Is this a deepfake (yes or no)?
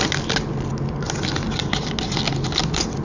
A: no